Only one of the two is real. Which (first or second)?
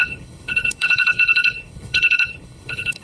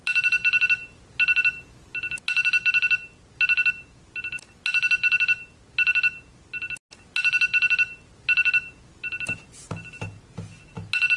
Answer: second